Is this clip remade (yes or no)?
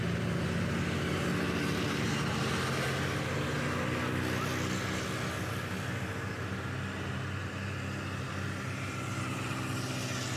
no